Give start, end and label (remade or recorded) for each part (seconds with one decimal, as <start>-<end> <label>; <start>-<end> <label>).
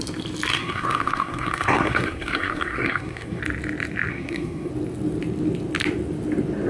0.0-0.5 recorded; 0.5-3.4 remade; 3.4-4.1 recorded; 4.1-4.7 remade; 4.7-6.7 recorded